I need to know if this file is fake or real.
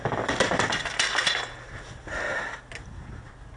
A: real